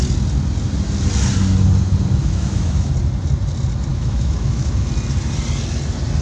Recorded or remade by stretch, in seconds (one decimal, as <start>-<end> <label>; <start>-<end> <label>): 0.0-2.2 recorded; 2.2-2.9 remade; 2.9-3.9 recorded; 3.9-4.9 remade; 4.9-6.2 recorded